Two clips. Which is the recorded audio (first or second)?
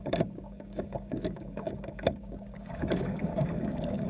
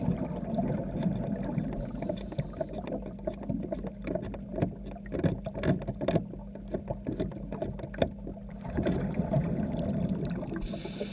second